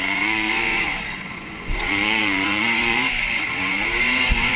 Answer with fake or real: fake